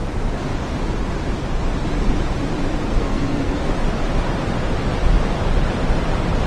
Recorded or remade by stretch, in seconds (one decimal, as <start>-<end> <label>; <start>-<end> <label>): 0.0-2.9 recorded; 2.9-3.7 remade; 3.7-6.5 recorded